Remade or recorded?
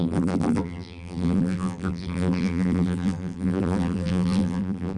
remade